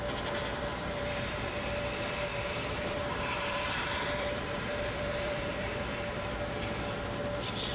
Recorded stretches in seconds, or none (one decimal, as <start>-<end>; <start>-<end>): 0.0-0.4; 1.5-2.3; 5.8-7.7